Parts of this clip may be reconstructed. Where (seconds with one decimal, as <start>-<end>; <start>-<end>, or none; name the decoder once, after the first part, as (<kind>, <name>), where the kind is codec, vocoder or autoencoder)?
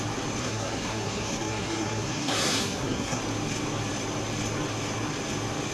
0.4-3.2 (codec, SNAC)